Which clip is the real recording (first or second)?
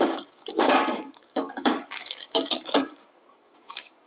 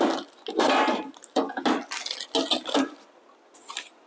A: second